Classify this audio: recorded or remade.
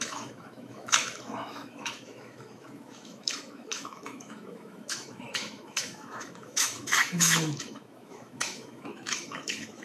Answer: remade